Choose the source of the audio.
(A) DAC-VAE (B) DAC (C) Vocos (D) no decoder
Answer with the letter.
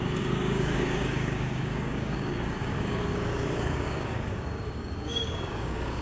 B